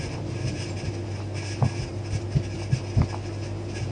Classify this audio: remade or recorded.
recorded